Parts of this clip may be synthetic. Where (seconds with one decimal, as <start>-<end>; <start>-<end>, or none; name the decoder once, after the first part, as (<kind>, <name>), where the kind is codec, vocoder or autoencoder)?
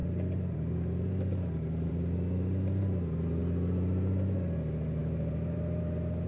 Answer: 0.0-3.4 (vocoder, BigVGAN v2); 5.0-5.8